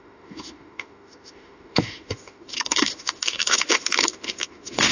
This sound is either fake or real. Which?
fake